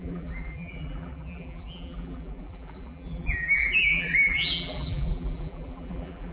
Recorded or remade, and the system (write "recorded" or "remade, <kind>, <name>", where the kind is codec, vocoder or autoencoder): remade, vocoder, BigVGAN v2